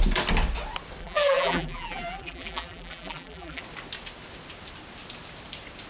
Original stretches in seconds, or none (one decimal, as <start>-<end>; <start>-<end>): 0.0-1.0; 3.6-5.9